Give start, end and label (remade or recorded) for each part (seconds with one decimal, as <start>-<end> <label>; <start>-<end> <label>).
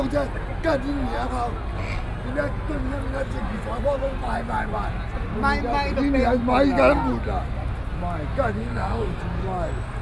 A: 0.0-8.6 recorded; 8.6-9.2 remade; 9.2-10.0 recorded